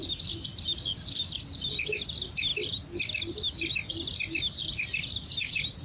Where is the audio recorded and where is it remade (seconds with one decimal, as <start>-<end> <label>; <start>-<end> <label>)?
0.0-0.5 remade; 0.5-1.8 recorded; 1.8-2.5 remade; 2.5-4.7 recorded; 4.7-5.8 remade